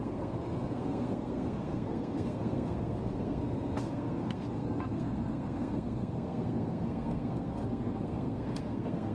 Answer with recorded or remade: remade